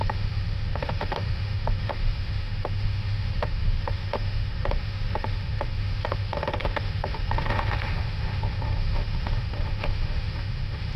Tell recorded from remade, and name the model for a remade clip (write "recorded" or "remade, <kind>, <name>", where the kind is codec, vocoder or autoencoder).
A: remade, autoencoder, DAC-VAE